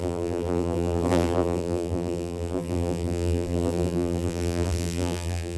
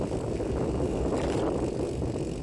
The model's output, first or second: first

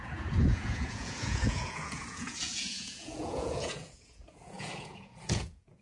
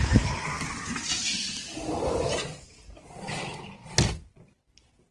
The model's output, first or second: first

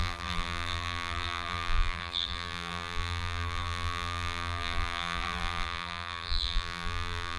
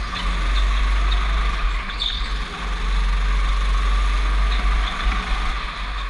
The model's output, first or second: first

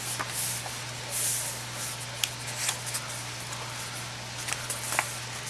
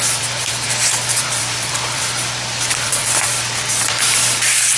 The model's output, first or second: second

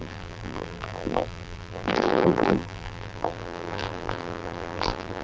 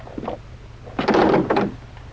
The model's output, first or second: first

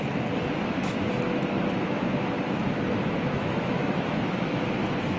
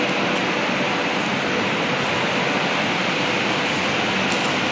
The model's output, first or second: first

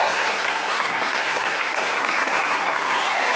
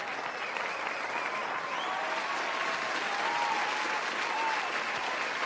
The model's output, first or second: first